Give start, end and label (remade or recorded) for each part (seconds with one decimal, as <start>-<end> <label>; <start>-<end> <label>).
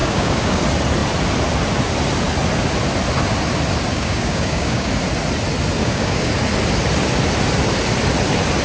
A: 0.0-0.6 remade; 0.6-3.9 recorded; 3.9-4.9 remade; 4.9-5.8 recorded; 5.8-6.3 remade; 6.3-8.6 recorded